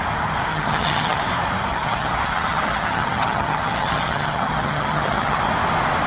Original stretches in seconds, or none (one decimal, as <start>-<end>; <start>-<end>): 0.0-0.5; 1.2-1.7; 5.4-6.1